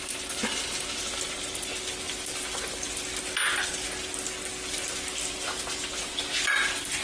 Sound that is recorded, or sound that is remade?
recorded